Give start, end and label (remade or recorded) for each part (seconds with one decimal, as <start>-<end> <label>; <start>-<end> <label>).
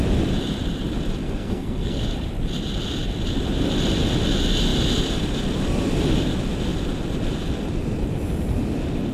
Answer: 0.0-1.2 recorded; 1.2-2.0 remade; 2.0-9.1 recorded